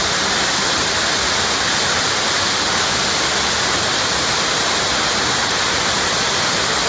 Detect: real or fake real